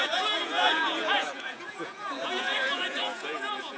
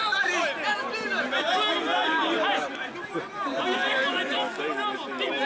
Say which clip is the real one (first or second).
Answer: second